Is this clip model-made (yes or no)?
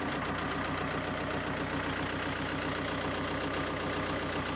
no